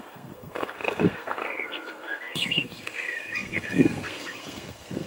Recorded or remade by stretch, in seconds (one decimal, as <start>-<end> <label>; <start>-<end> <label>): 0.0-5.1 remade